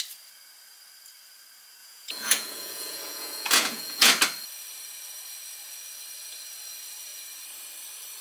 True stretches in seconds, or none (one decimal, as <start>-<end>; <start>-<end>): 0.0-1.8; 4.1-8.2